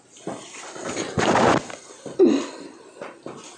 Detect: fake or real real